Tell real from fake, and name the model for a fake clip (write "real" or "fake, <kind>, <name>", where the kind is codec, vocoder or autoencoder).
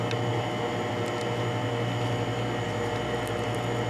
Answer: real